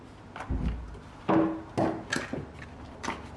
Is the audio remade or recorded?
recorded